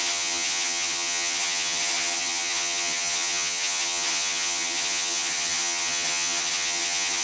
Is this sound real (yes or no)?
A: no